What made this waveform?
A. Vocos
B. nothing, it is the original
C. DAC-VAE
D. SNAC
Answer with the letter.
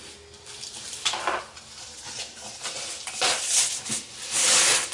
B